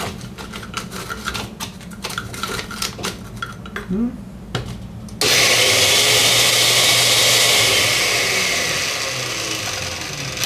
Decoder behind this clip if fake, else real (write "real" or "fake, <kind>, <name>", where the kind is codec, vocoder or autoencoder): real